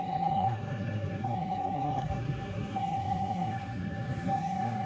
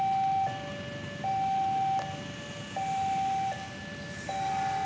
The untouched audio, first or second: second